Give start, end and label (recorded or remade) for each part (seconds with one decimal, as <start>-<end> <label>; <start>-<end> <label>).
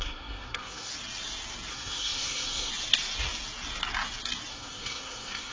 0.0-0.9 remade; 0.9-1.7 recorded; 1.7-2.7 remade; 2.7-4.5 recorded; 4.5-5.5 remade